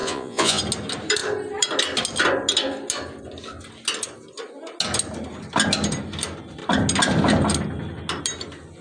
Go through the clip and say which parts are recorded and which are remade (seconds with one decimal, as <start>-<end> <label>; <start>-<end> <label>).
0.0-0.6 remade; 0.6-8.8 recorded